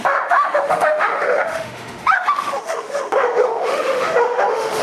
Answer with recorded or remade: remade